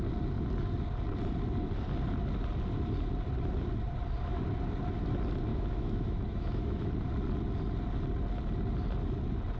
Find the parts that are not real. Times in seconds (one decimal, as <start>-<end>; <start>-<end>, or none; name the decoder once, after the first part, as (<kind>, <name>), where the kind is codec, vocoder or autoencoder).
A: 5.5-6.9 (autoencoder, DAC-VAE)